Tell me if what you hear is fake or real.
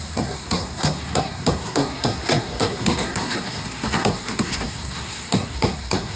fake